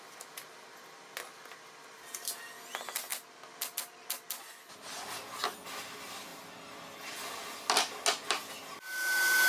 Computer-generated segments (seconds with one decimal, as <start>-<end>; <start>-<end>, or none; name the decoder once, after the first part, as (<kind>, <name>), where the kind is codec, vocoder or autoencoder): none

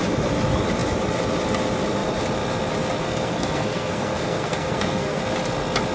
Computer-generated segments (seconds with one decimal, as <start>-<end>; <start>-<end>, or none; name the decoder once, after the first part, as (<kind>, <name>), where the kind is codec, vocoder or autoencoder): 3.0-5.2 (codec, SNAC)

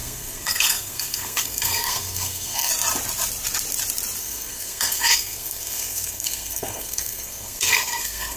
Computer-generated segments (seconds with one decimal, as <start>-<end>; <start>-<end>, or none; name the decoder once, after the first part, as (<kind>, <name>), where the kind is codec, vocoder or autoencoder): 0.0-2.7 (codec, SNAC); 4.2-8.4